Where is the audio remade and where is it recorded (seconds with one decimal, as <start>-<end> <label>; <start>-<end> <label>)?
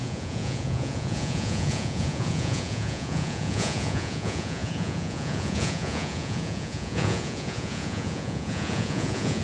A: 0.0-9.4 remade